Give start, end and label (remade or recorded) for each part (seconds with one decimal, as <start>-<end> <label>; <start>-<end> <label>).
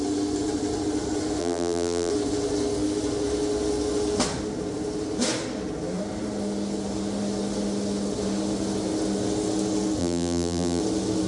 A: 0.0-1.4 recorded; 1.4-2.1 remade; 2.1-10.0 recorded; 10.0-10.8 remade; 10.8-11.3 recorded